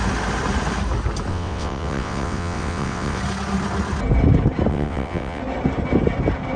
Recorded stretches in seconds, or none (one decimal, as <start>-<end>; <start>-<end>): 0.0-1.3; 3.2-4.7; 5.4-6.6